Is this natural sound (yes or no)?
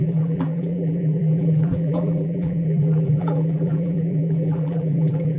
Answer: no